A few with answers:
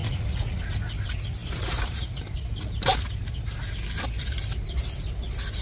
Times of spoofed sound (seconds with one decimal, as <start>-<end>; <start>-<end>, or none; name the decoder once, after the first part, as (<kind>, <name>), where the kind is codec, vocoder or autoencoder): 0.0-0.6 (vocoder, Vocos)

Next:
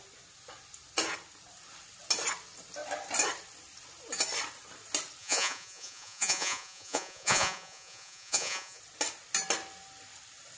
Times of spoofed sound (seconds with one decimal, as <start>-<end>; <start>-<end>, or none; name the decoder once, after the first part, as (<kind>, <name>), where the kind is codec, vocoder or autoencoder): 5.2-8.8 (vocoder, Vocos)

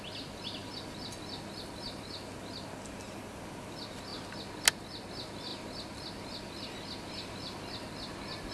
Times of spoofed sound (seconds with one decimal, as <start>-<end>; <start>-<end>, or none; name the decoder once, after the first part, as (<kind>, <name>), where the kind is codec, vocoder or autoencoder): none

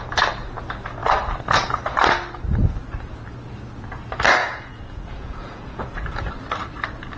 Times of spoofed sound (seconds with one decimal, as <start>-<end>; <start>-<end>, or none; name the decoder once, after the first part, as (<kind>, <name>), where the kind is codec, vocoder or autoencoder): 4.4-6.3 (vocoder, Vocos)

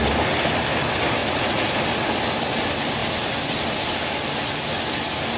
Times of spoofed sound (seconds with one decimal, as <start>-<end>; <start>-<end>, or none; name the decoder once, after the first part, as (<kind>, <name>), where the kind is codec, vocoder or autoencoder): 1.2-1.7 (vocoder, Vocos)